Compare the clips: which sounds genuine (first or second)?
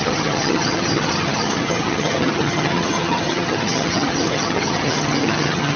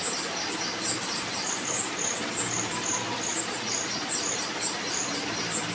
second